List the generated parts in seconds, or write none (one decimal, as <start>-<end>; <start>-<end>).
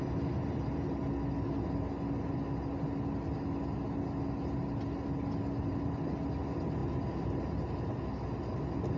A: none